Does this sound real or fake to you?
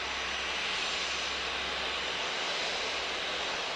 real